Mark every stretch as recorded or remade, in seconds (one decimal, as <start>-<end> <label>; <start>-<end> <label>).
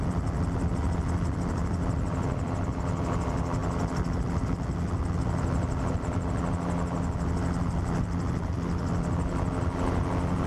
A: 0.0-10.5 recorded